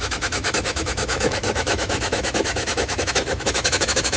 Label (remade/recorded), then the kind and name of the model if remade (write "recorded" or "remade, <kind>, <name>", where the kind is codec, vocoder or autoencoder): remade, autoencoder, DAC-VAE